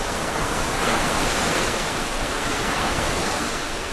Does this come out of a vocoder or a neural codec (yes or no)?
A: yes